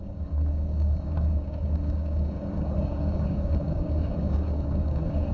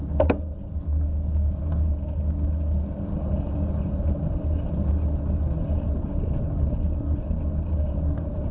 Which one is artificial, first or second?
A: first